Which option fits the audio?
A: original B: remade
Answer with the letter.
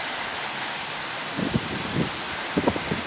A